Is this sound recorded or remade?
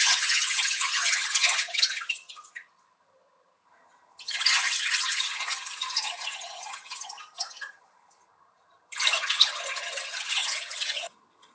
remade